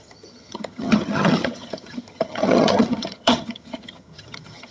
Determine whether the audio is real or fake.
fake